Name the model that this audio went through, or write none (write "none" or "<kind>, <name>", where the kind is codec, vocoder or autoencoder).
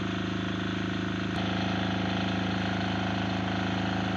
none